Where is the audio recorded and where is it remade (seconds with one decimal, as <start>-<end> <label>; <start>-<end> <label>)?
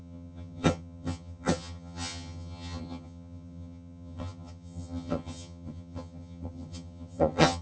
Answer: 0.0-7.6 remade